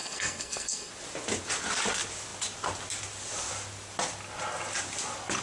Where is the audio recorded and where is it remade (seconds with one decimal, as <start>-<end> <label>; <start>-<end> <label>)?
0.0-0.9 remade; 0.9-5.4 recorded